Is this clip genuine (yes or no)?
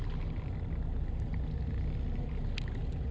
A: yes